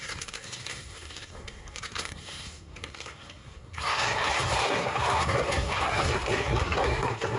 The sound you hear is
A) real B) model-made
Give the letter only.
B